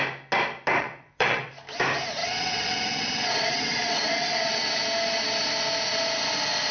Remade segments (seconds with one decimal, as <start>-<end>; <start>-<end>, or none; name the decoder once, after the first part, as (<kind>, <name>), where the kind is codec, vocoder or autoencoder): 0.8-1.5 (vocoder, WaveNeXt); 2.2-4.8